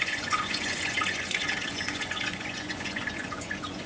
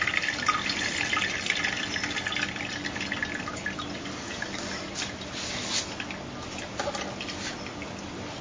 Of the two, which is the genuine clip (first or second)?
second